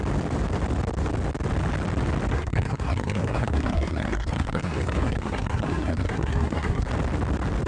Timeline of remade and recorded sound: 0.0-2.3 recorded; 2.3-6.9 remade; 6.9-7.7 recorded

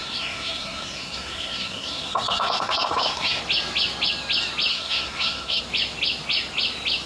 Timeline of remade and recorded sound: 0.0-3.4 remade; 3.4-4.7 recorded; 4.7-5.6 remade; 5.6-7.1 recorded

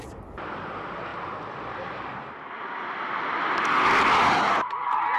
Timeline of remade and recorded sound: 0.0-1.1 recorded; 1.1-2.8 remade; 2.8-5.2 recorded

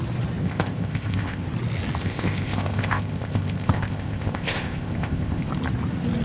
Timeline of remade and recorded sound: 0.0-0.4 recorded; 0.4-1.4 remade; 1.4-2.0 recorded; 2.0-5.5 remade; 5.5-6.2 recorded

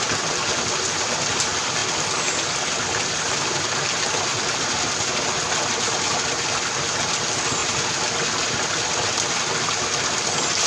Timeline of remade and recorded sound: 0.0-10.7 recorded